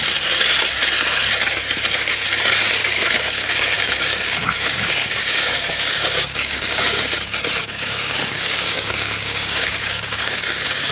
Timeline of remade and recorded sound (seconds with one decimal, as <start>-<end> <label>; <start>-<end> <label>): 0.0-2.8 recorded; 2.8-7.0 remade; 7.0-7.6 recorded; 7.6-10.9 remade